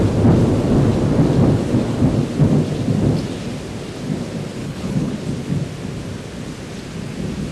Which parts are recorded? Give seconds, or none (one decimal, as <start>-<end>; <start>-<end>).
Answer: 0.0-4.6; 5.1-7.5